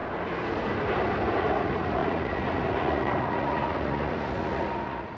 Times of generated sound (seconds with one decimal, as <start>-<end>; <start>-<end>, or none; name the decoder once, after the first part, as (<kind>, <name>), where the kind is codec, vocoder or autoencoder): 1.4-5.2 (vocoder, Vocos)